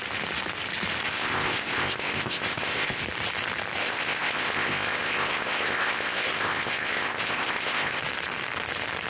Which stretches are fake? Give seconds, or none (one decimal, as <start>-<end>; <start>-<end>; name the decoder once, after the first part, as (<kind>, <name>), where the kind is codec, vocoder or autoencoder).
1.0-3.0 (codec, ZipCodec); 3.8-8.0